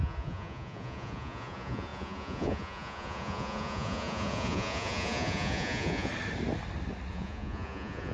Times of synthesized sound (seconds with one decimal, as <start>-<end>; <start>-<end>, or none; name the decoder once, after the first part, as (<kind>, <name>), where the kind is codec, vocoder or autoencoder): 0.0-6.1 (vocoder, Vocos); 7.1-8.1